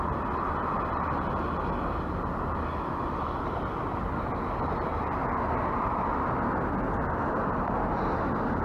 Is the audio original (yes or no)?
yes